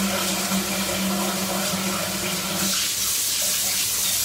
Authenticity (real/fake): real